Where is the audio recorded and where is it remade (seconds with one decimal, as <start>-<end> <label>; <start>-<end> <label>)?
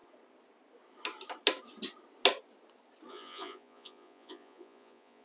0.0-3.1 recorded; 3.1-5.2 remade